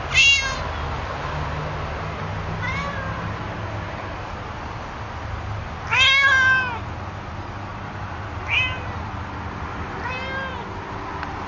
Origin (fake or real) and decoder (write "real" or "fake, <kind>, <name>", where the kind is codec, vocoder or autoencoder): real